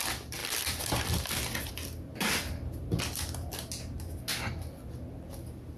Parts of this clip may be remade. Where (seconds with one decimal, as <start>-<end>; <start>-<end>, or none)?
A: none